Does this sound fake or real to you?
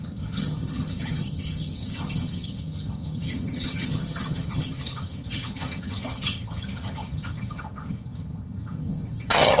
fake